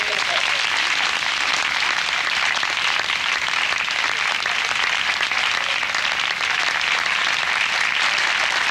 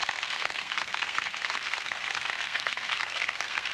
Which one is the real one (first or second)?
first